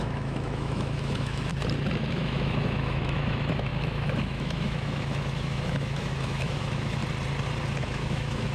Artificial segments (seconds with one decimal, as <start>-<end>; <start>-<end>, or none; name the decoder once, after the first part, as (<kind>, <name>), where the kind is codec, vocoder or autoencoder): 0.0-1.5 (autoencoder, DAC-VAE); 2.1-7.0; 7.8-8.5